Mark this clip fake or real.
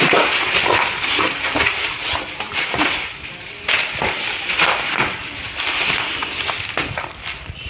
fake